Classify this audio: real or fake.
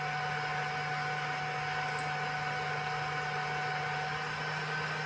real